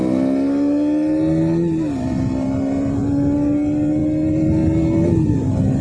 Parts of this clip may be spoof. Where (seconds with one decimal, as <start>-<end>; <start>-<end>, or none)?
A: none